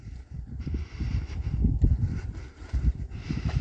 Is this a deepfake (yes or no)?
yes